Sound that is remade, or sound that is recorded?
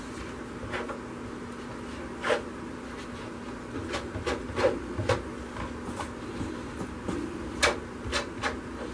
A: recorded